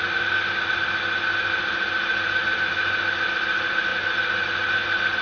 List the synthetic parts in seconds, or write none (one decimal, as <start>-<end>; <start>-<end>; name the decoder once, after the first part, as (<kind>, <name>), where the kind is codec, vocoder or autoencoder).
none